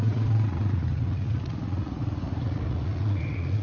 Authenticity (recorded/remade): remade